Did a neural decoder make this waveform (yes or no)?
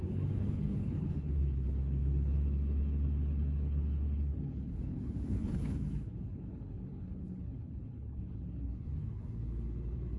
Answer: yes